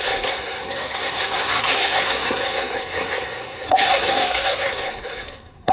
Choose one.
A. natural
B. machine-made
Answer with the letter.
B